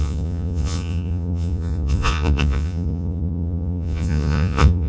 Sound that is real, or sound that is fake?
fake